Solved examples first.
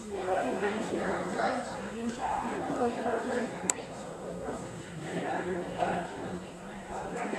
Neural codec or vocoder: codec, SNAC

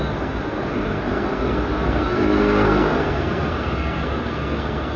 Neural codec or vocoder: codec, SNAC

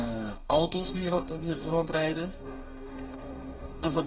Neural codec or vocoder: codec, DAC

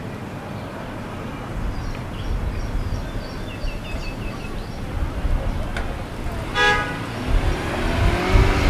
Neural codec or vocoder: none